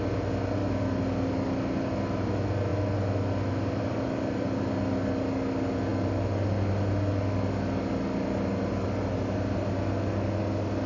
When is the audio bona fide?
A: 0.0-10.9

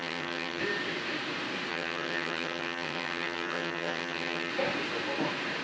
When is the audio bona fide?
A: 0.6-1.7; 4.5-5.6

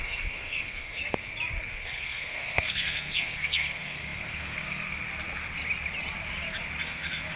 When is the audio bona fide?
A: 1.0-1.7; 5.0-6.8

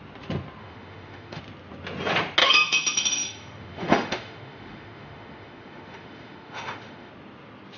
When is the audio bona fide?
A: 0.0-0.6; 1.4-2.4; 7.1-7.8